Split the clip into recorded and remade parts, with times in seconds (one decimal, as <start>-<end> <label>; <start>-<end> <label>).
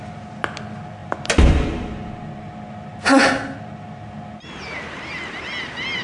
0.0-6.0 recorded